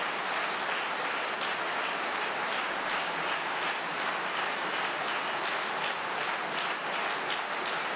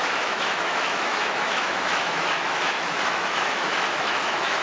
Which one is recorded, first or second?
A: first